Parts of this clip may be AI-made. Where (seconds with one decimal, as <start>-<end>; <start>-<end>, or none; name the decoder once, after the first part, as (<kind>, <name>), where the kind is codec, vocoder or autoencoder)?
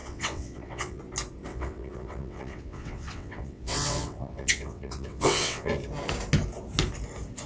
0.0-1.0 (vocoder, WaveNeXt); 1.5-5.7